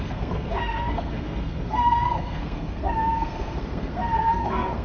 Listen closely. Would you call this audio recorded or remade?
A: remade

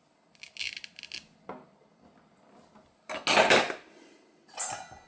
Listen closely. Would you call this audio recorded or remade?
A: recorded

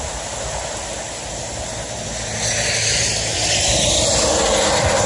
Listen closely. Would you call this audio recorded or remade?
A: recorded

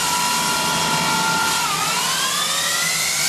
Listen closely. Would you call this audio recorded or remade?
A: recorded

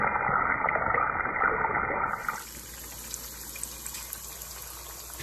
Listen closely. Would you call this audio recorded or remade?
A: recorded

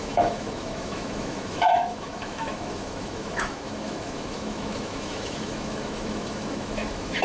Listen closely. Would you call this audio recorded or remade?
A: remade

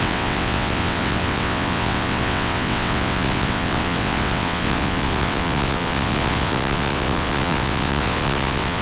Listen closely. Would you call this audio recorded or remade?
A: remade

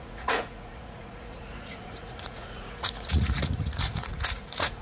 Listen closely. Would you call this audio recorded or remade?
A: remade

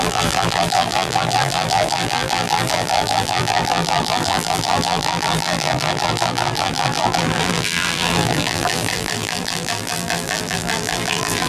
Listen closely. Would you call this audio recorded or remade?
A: remade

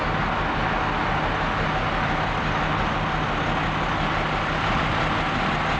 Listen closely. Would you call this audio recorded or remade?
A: recorded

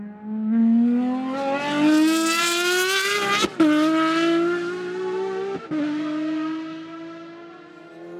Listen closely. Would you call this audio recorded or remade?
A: recorded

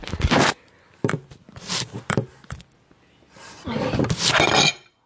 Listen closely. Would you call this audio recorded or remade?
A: recorded